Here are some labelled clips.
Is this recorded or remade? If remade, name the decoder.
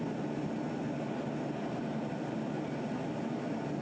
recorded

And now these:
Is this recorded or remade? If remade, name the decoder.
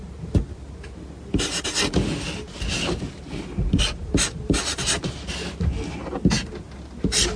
recorded